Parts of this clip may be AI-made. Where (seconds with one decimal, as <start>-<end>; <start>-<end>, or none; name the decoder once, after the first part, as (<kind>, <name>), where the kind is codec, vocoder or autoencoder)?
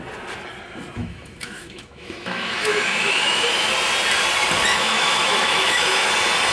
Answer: 1.0-3.7 (autoencoder, DAC-VAE); 4.7-6.1